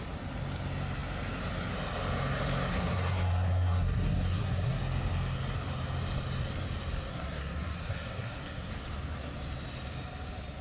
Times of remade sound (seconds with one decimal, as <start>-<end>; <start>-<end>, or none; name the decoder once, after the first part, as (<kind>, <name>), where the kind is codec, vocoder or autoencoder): 2.7-4.8 (codec, SNAC); 7.1-8.7